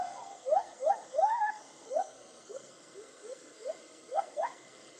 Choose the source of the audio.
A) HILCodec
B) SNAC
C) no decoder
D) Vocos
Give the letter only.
B